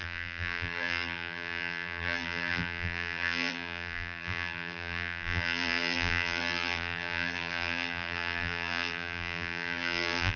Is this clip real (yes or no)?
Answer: no